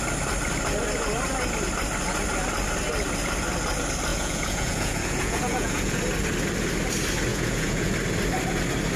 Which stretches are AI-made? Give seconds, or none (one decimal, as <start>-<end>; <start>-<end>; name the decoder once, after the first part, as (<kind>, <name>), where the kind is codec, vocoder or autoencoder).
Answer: 4.1-6.0 (vocoder, Vocos); 7.3-7.9